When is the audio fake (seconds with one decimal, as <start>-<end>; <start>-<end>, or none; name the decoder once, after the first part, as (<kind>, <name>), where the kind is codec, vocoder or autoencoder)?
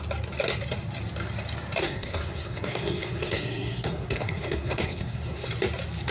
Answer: 1.8-5.5 (codec, SNAC)